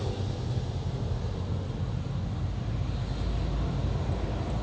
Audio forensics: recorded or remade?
recorded